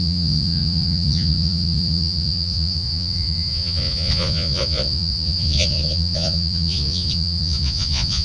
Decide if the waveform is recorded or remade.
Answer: remade